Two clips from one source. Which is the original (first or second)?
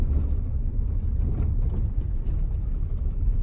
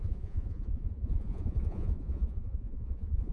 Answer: first